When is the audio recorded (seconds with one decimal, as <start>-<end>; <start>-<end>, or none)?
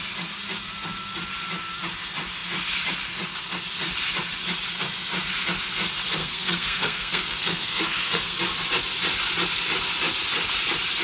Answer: 0.0-6.2; 8.4-11.0